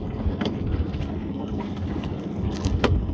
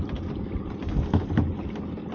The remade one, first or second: first